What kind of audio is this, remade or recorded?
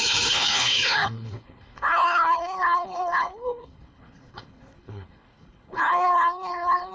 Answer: remade